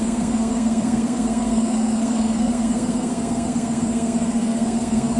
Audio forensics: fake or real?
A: fake